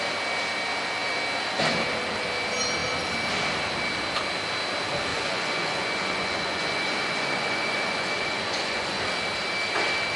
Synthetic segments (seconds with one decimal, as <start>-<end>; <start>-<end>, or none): 5.1-9.0